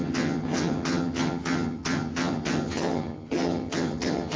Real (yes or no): no